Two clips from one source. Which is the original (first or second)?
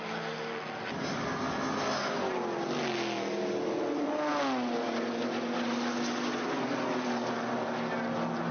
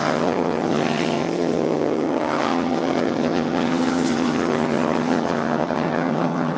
first